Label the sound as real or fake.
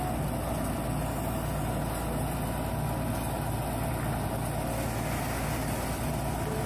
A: real